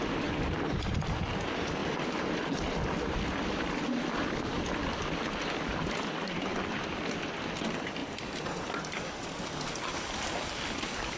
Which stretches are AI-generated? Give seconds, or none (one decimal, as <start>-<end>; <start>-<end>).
1.8-4.1; 6.5-7.1; 8.0-9.4